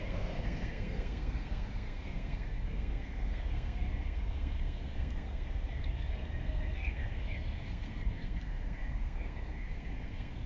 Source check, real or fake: fake